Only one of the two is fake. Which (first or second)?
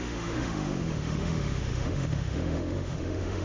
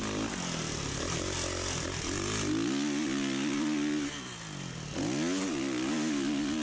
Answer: first